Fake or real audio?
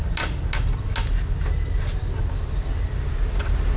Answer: real